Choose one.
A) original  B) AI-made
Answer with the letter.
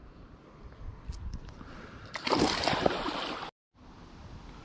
A